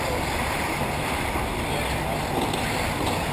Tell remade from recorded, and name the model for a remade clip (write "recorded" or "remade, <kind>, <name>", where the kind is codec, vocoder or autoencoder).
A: recorded